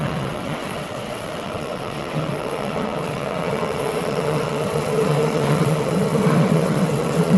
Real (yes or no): no